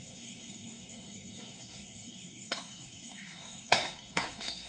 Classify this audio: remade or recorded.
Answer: remade